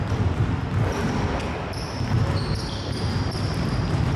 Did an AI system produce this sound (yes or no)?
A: no